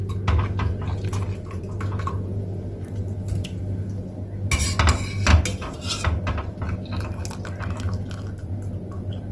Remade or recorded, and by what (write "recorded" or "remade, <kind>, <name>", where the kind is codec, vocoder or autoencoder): recorded